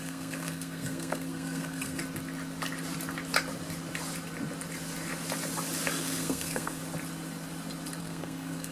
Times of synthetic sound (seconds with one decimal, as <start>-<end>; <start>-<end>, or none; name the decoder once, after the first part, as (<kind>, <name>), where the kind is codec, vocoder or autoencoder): 0.0-2.0 (codec, SNAC); 6.0-6.8; 8.0-8.7